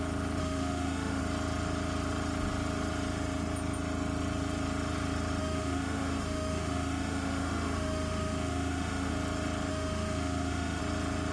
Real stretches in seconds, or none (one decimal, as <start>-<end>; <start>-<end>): 0.0-0.4; 1.2-5.4; 9.1-9.7; 10.8-11.3